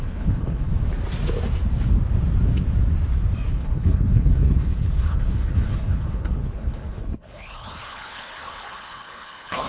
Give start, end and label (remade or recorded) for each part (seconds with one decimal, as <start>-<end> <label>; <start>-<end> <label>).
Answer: 0.0-0.7 remade; 0.7-3.5 recorded; 3.5-9.7 remade